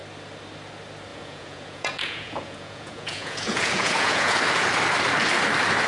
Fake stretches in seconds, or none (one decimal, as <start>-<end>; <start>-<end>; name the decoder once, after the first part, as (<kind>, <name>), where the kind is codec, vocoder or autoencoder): 1.1-4.4 (vocoder, Vocos)